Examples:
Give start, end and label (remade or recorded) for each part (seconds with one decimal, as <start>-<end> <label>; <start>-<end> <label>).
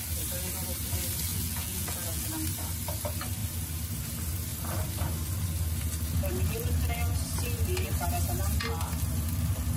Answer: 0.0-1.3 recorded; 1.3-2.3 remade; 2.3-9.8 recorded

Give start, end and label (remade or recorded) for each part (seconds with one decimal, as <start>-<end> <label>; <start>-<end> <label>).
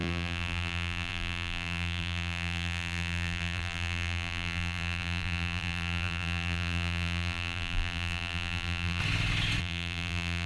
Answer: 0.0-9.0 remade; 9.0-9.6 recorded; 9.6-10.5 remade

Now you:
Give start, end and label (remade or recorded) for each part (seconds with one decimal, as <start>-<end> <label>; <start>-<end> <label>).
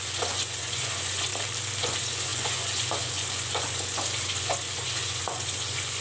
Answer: 0.0-1.3 remade; 1.3-1.8 recorded; 1.8-6.0 remade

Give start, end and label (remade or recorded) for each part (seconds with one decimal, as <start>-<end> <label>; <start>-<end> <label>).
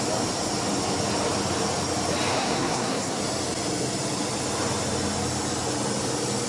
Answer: 0.0-2.3 recorded; 2.3-3.2 remade; 3.2-6.5 recorded